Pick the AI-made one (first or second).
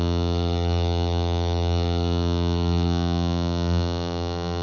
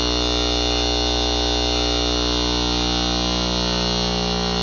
first